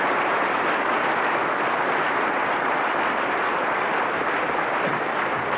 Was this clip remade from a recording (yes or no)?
no